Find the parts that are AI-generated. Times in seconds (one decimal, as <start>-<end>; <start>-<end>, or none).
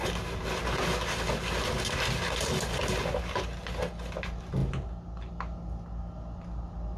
none